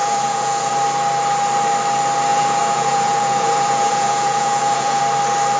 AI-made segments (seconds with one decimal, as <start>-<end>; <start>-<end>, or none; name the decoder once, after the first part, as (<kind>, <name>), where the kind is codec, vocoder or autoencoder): 0.0-0.7 (vocoder, Vocos); 2.3-5.0